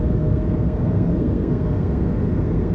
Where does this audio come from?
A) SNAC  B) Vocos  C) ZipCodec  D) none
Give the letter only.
A